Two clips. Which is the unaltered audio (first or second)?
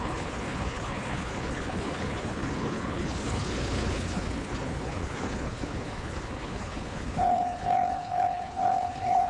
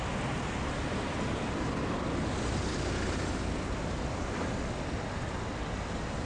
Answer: second